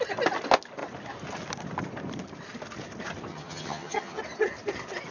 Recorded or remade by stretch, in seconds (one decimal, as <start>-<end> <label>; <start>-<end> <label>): 0.0-3.3 recorded; 3.3-4.2 remade; 4.2-5.1 recorded